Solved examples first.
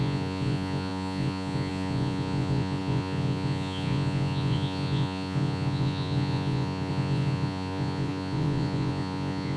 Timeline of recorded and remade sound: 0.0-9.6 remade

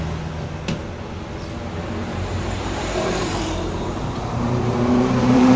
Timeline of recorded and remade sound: 0.0-2.0 recorded; 2.0-5.6 remade

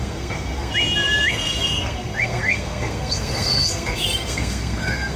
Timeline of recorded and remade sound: 0.0-0.7 remade; 0.7-1.3 recorded; 1.3-5.2 remade

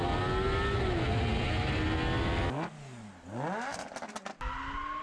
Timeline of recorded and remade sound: 0.0-5.0 recorded